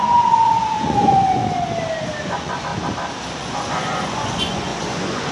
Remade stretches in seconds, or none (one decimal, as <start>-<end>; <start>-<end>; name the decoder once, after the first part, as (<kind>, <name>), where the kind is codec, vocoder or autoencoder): 0.0-1.4 (vocoder, Vocos); 2.2-2.7; 3.3-5.3